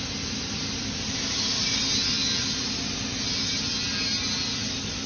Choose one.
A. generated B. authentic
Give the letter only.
B